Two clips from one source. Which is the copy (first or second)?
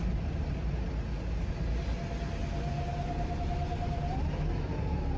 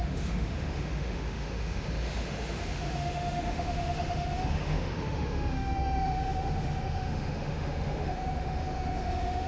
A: second